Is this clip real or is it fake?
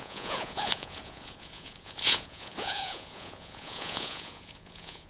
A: fake